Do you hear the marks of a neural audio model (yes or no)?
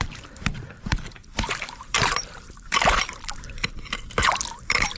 yes